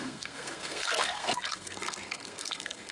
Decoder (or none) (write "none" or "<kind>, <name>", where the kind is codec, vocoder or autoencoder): codec, SNAC